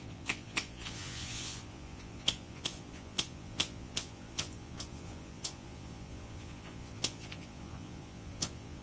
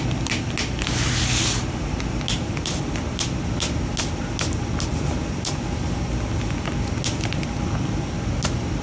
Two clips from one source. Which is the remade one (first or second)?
first